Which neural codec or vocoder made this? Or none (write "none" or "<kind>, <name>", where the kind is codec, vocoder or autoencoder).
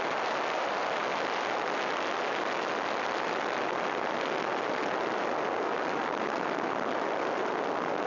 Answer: none